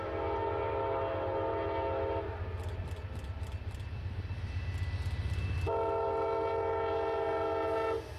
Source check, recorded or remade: recorded